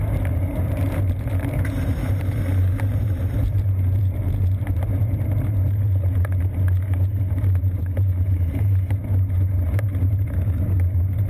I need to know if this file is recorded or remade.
remade